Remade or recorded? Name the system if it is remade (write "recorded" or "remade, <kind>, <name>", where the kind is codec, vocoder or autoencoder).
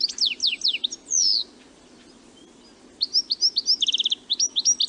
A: recorded